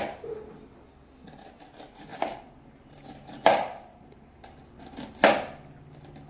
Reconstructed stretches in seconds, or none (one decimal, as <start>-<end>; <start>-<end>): 2.1-5.1